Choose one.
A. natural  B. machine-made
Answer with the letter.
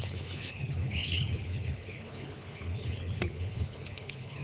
B